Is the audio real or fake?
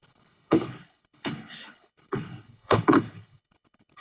fake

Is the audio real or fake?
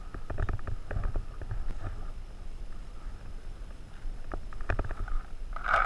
real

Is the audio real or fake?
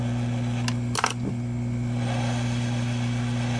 real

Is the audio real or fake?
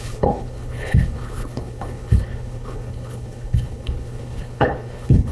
fake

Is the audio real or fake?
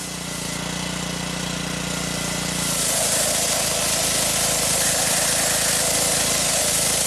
real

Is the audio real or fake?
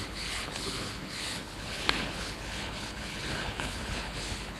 fake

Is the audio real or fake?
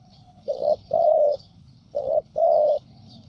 fake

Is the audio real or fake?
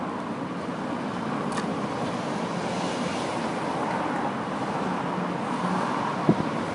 real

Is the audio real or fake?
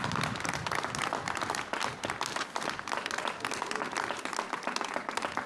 real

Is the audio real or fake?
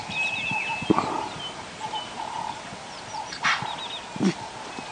real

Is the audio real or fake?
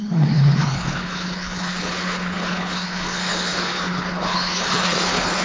fake